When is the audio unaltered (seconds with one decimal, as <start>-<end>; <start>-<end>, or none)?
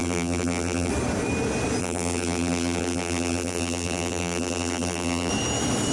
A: 0.9-1.8; 5.3-5.9